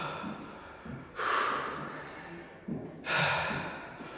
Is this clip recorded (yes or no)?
yes